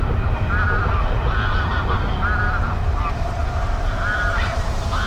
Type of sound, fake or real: real